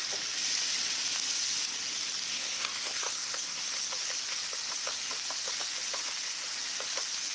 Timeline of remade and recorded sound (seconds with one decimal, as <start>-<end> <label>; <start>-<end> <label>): 0.0-2.3 recorded; 2.3-3.6 remade; 3.6-7.3 recorded